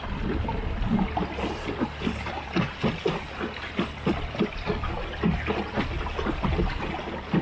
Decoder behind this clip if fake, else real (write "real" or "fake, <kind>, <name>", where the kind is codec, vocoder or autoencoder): real